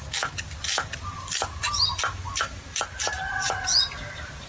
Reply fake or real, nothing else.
real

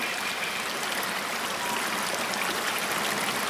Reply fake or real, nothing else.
real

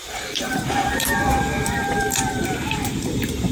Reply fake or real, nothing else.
fake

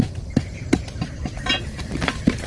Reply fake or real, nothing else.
fake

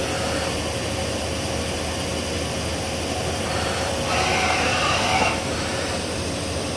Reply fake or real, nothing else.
real